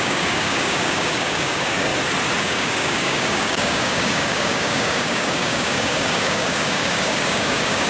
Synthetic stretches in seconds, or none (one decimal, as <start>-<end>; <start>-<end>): 0.0-1.9; 2.4-7.9